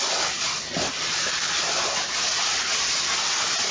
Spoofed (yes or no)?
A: no